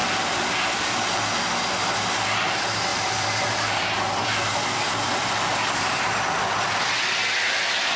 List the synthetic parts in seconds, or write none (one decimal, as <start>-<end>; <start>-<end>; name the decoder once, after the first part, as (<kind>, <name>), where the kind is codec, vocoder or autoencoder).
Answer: 0.0-1.7 (vocoder, BigVGAN v2); 2.9-7.0